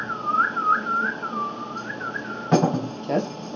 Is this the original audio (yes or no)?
yes